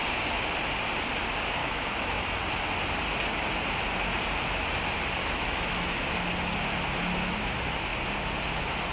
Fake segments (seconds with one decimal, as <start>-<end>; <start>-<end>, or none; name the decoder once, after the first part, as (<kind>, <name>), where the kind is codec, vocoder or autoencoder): 1.6-2.4 (autoencoder, DAC-VAE); 5.2-6.1